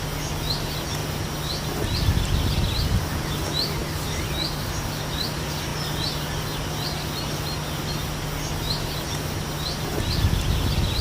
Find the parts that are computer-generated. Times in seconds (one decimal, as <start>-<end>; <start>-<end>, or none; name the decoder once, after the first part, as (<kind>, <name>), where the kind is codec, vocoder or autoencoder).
3.8-4.8 (vocoder, BigVGAN v2)